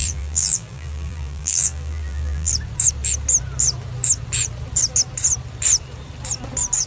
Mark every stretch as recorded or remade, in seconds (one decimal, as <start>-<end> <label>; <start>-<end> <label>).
0.0-2.5 remade; 2.5-6.9 recorded